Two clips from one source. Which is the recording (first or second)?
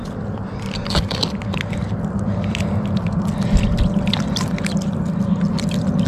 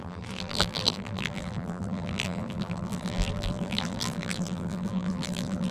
first